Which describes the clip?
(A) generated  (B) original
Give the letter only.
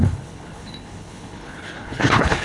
A